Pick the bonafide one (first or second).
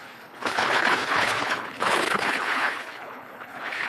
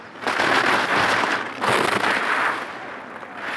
second